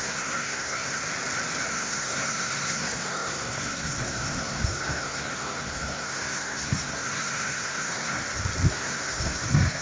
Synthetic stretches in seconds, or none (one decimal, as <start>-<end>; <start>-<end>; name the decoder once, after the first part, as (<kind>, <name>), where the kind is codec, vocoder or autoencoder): 0.0-1.0 (codec, SNAC); 1.7-8.2; 8.7-9.8